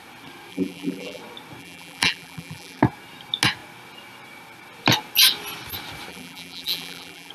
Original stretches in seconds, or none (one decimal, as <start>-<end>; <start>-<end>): 0.0-0.5; 1.2-1.6; 2.8-6.1